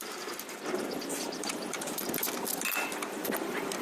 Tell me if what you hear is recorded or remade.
remade